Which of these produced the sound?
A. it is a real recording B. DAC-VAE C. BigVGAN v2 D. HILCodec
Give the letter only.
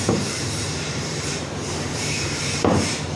C